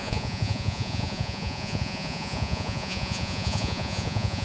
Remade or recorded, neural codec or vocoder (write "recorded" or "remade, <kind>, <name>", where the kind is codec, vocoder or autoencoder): remade, vocoder, Vocos